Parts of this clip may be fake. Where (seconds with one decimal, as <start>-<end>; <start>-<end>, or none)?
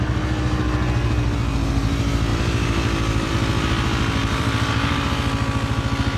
2.3-3.3; 4.2-5.1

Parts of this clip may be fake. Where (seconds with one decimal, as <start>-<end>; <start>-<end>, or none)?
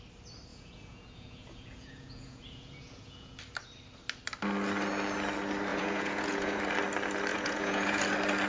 0.5-3.4; 5.7-6.6; 7.3-8.0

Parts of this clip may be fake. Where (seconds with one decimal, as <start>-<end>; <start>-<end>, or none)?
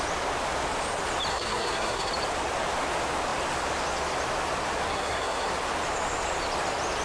1.3-2.1; 4.9-5.5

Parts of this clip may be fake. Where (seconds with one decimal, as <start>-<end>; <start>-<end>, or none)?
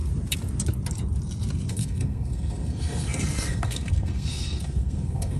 1.7-5.4